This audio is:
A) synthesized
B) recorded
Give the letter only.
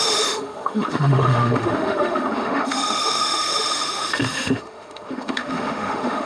A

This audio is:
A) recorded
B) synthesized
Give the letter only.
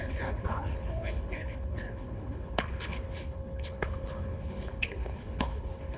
B